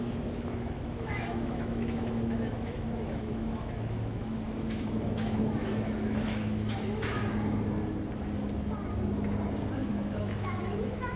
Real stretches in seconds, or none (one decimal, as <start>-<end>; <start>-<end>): 7.2-9.9

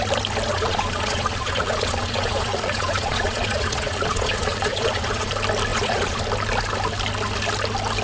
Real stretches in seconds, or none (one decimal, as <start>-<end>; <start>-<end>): 0.0-0.5; 5.3-5.7; 6.2-8.0

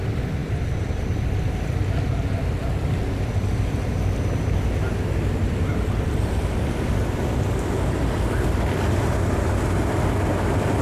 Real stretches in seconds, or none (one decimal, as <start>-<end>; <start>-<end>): 0.0-0.4; 1.6-10.8

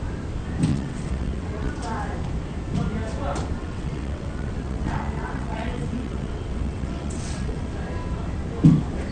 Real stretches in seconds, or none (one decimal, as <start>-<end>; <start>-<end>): 0.0-0.7; 1.7-3.6; 7.7-9.1